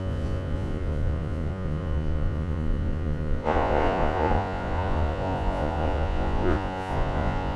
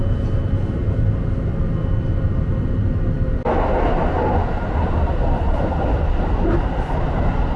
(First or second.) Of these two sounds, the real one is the second